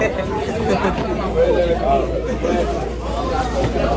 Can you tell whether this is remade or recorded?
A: recorded